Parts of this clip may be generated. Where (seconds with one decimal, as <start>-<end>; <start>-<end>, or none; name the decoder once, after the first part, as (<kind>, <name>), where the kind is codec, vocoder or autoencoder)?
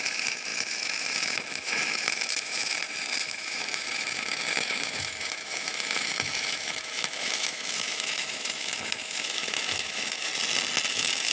0.0-10.3 (autoencoder, DAC-VAE); 10.9-11.3